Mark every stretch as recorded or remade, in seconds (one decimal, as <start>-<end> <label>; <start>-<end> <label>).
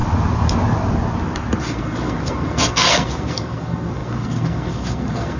0.0-1.6 recorded; 1.6-5.4 remade